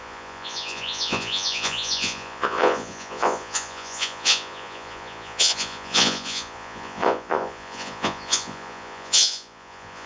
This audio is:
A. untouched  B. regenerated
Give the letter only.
B